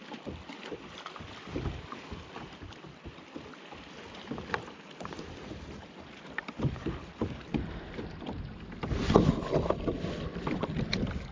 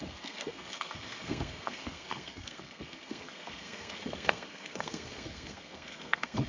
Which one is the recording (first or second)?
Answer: first